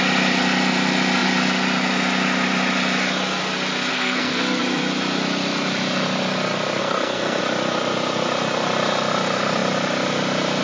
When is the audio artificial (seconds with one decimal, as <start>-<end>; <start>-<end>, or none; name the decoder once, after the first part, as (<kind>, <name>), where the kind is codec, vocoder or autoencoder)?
3.9-4.6 (codec, SNAC); 6.8-7.4